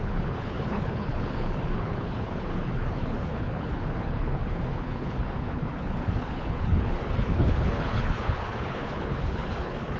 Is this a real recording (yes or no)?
no